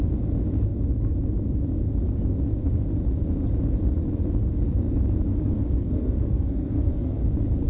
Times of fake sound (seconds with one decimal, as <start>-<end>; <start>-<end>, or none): 5.3-7.2